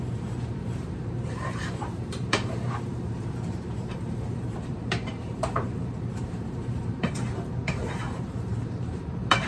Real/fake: fake